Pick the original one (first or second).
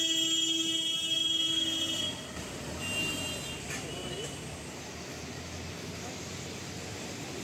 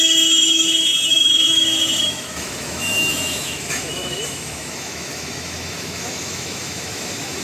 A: first